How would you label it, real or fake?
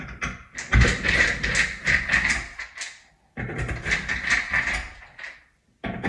real